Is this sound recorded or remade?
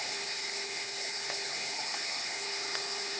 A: remade